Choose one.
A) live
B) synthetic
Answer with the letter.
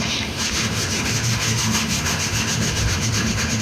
B